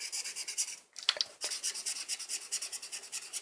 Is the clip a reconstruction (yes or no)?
no